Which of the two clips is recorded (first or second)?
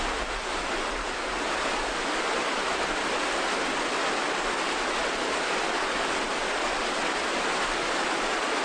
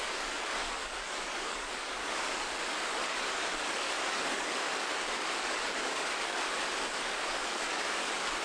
first